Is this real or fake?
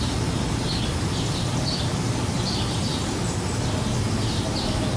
real